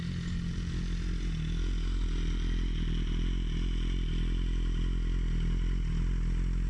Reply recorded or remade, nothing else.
recorded